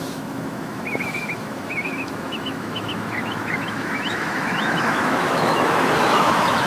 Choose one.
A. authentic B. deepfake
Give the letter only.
B